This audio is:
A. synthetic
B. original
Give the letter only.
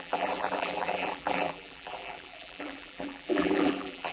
A